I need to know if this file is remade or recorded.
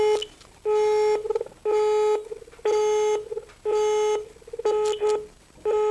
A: recorded